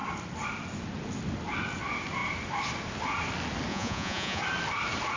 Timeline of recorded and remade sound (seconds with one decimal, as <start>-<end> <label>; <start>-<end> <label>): 0.0-3.7 recorded; 3.7-4.4 remade; 4.4-5.2 recorded